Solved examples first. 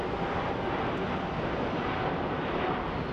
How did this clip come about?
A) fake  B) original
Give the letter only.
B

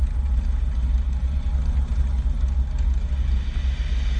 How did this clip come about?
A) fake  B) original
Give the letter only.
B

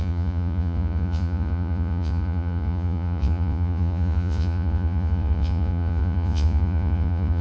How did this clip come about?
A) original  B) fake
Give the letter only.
B